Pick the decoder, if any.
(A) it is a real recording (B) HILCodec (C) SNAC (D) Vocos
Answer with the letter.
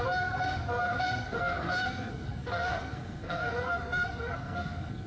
C